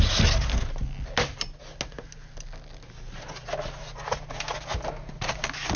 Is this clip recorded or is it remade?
recorded